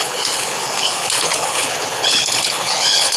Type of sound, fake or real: fake